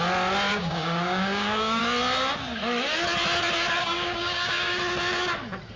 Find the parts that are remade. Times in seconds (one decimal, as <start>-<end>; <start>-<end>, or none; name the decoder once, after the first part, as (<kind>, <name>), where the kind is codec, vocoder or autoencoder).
0.5-1.8 (codec, DAC); 3.8-4.8